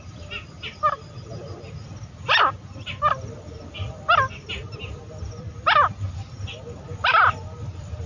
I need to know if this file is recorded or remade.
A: recorded